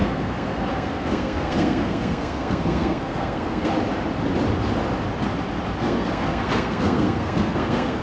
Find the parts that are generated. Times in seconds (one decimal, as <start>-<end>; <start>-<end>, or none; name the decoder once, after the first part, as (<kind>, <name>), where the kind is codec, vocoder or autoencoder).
0.0-3.7 (codec, SNAC); 5.8-8.0